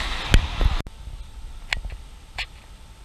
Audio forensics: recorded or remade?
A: recorded